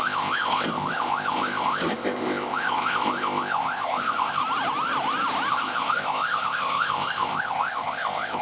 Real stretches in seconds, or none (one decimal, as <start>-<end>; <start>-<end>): 4.4-5.5